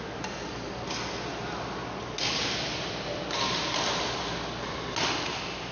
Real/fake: real